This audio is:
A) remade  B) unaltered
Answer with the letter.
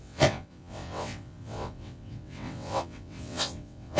A